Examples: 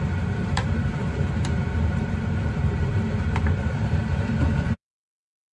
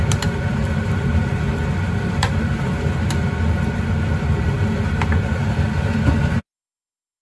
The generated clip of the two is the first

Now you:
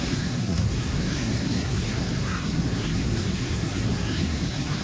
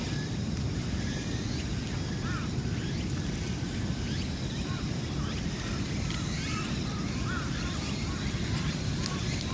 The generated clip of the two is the first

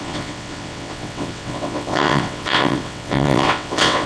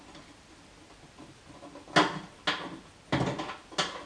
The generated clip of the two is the first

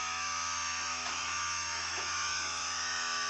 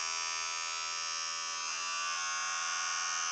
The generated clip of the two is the first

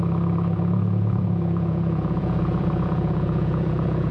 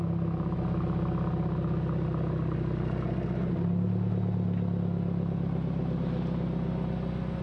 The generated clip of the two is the first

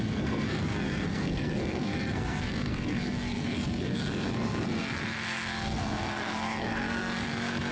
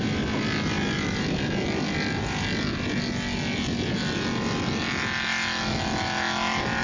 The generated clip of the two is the first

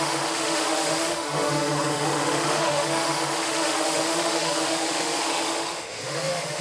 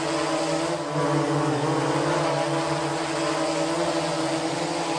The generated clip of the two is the first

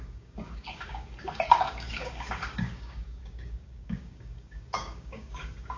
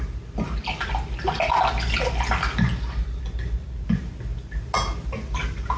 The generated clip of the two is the first